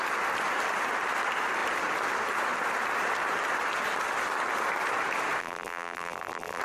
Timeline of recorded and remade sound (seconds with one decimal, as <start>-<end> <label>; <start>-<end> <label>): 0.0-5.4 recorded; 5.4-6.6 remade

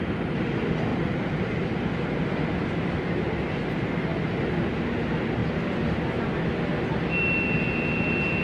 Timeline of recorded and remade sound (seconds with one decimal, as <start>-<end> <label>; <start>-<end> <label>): 0.0-0.9 recorded; 0.9-2.4 remade; 2.4-8.4 recorded

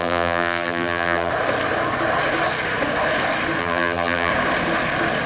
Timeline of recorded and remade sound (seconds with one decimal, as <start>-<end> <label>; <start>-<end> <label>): 0.0-1.3 remade; 1.3-3.6 recorded; 3.6-4.3 remade; 4.3-5.3 recorded

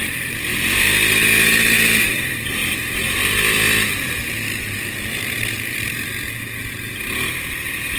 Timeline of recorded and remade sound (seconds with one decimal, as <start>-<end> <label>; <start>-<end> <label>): 0.0-2.6 remade; 2.6-5.1 recorded; 5.1-8.0 remade

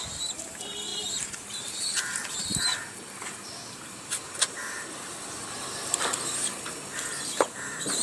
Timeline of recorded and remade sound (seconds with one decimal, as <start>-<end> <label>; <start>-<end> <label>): 0.0-8.0 remade